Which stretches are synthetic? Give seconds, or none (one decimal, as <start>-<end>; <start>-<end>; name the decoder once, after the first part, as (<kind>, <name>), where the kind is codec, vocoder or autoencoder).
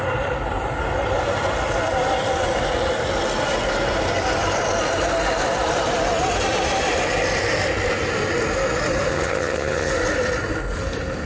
9.1-9.9 (vocoder, HiFi-GAN)